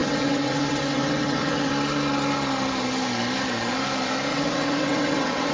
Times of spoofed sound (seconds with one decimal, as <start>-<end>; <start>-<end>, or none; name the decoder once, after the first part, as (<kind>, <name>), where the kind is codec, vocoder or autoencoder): 0.0-1.7 (vocoder, WaveNeXt); 4.3-5.5